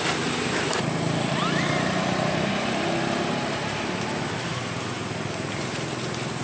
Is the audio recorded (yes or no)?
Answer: yes